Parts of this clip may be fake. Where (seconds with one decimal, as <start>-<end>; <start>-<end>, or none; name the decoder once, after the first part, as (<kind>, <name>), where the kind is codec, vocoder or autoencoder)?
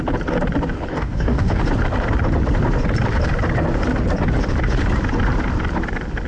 0.9-1.6 (codec, DAC)